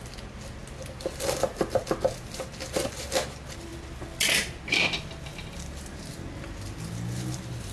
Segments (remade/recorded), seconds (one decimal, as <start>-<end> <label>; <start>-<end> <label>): 0.0-7.7 recorded